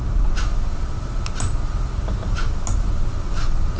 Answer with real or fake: real